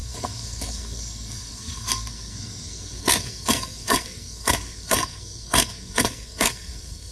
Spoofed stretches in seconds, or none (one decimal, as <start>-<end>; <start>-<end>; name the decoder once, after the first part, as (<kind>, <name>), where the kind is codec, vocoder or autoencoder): 0.0-7.1 (codec, SNAC)